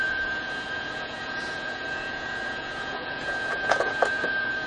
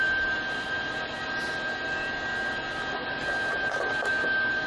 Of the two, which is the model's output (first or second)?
first